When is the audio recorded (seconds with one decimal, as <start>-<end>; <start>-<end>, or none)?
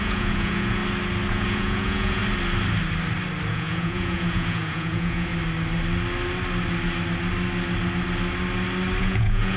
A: 0.8-1.3; 2.2-3.5; 5.3-9.0